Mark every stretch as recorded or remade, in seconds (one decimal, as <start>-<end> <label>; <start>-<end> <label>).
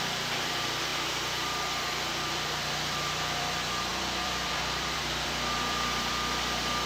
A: 0.0-6.9 remade